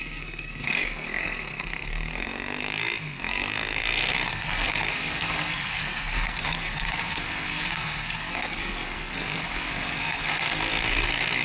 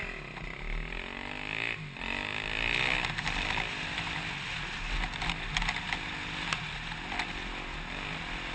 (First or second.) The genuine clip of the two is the second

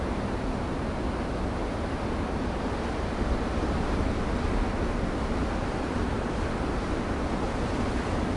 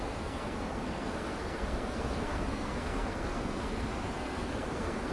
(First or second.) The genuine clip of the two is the first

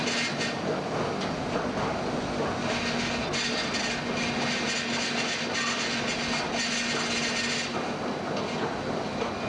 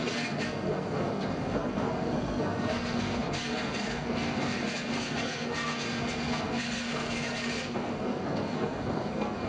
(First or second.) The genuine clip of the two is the first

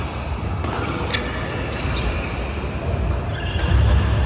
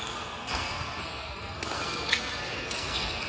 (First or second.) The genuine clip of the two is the first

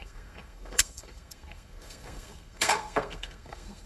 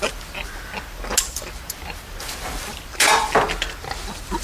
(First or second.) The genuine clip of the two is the second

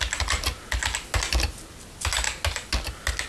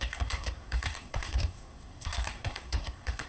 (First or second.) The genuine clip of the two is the first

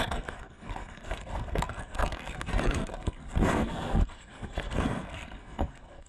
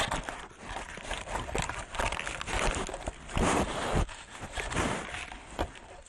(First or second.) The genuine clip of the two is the second